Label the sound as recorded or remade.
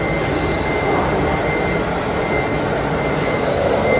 recorded